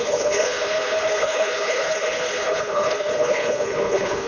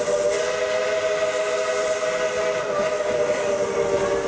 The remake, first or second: first